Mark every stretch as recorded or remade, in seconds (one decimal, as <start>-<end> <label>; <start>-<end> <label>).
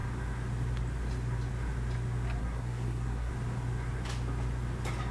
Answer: 0.0-2.4 recorded; 2.4-3.3 remade; 3.3-5.1 recorded